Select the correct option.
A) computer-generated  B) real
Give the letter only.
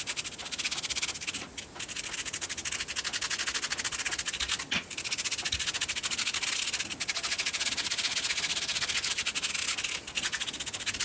B